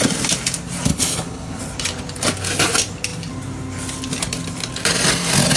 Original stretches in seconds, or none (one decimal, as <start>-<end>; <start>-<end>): 0.0-0.9; 1.6-5.6